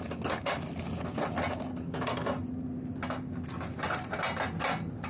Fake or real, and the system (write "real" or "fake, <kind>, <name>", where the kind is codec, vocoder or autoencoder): real